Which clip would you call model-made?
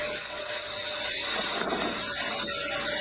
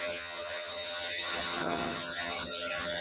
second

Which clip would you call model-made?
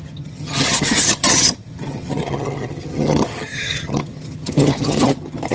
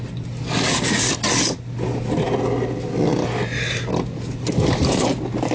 first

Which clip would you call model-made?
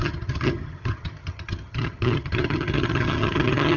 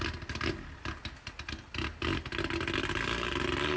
first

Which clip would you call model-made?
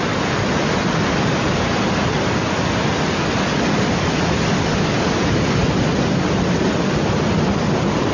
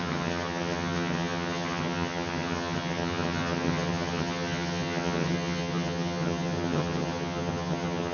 second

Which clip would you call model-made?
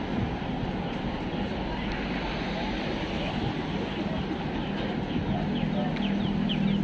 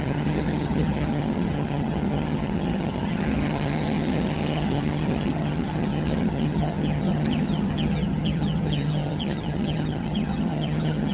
second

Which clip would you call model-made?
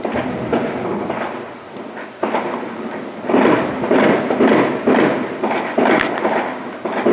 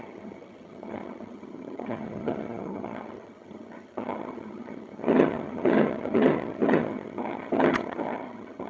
second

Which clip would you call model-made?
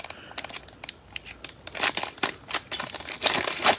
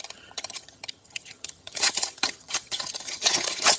second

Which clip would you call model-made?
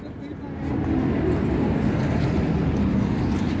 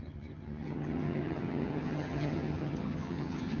second